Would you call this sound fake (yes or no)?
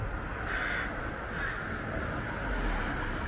no